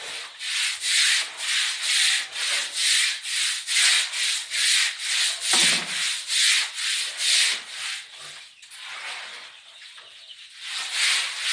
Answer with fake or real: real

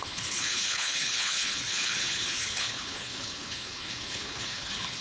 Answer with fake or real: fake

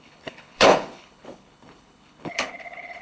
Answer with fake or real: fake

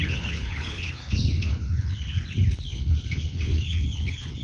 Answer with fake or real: fake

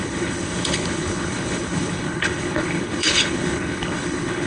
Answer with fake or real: fake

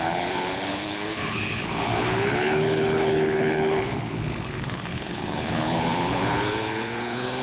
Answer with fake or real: fake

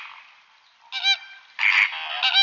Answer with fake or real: real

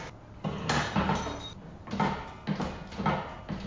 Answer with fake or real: real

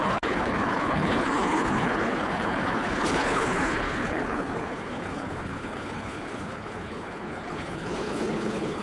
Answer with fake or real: fake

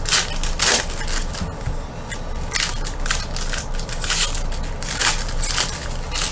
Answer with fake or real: real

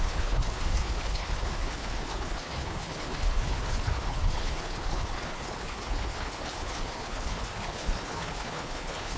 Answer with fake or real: fake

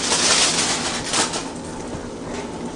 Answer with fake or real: real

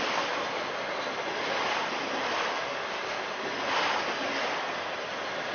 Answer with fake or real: real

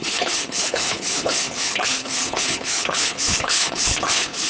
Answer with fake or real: fake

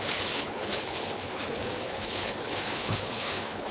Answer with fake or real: fake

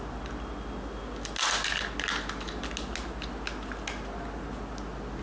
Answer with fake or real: real